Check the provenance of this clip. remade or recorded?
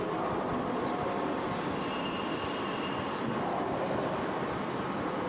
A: recorded